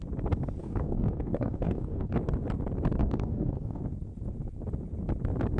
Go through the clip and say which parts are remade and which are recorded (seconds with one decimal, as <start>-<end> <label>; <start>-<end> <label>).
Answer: 0.0-0.6 recorded; 0.6-2.2 remade; 2.2-3.0 recorded; 3.0-3.8 remade; 3.8-5.6 recorded